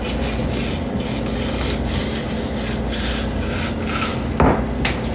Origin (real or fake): real